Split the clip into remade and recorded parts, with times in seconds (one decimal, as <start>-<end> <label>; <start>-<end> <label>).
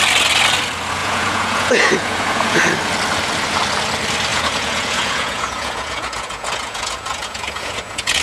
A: 0.0-1.0 recorded; 1.0-2.6 remade; 2.6-4.3 recorded; 4.3-8.2 remade